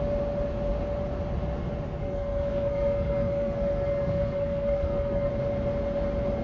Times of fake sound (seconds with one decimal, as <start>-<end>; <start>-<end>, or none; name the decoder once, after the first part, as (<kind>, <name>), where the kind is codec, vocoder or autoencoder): 2.0-5.3 (codec, SNAC)